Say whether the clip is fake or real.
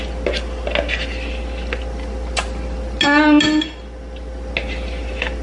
real